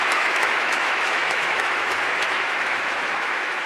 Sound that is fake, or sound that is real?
fake